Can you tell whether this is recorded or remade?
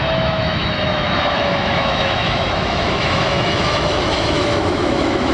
remade